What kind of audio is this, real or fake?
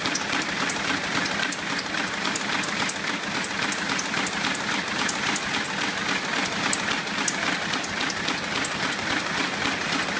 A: fake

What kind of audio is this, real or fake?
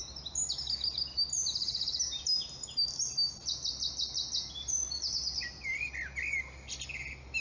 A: real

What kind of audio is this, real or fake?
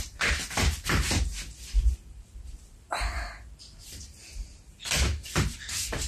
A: fake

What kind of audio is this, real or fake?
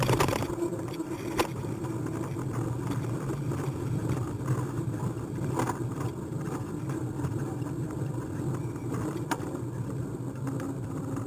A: fake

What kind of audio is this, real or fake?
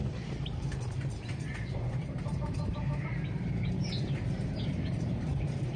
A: fake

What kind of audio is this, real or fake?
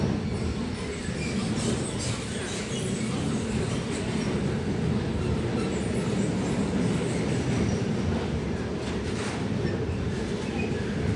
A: real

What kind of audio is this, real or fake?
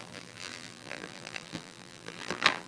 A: fake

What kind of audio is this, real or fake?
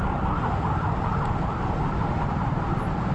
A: real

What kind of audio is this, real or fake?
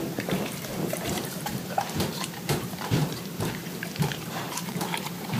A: fake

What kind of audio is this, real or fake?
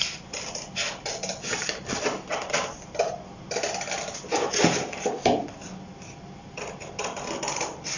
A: real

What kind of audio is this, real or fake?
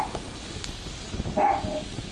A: real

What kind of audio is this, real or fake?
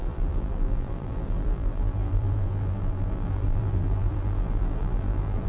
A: fake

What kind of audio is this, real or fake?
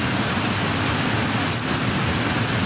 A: real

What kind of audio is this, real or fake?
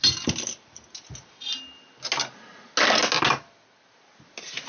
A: real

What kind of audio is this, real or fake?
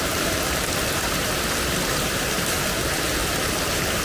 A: real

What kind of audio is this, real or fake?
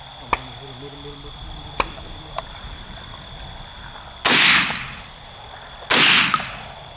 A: real